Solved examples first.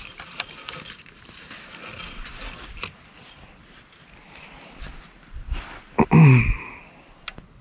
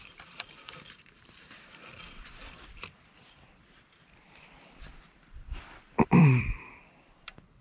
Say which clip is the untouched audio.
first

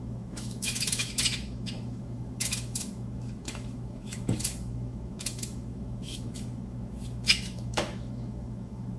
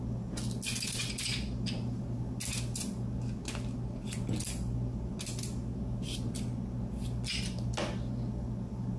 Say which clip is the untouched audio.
second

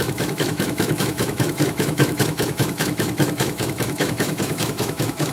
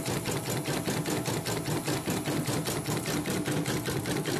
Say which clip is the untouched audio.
second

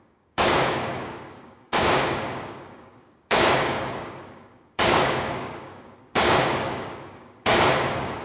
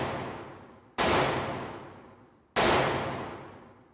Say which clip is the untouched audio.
second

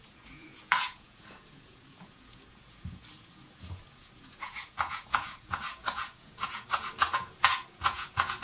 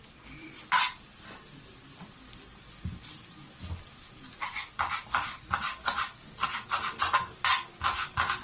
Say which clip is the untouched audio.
second